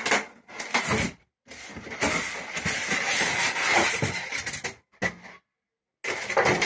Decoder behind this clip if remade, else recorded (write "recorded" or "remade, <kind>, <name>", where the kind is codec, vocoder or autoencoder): recorded